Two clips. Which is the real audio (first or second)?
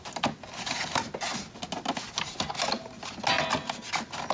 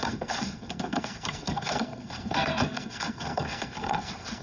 first